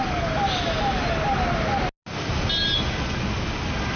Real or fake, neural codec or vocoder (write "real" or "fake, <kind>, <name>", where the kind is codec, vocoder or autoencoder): real